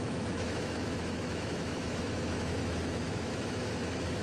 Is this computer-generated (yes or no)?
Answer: yes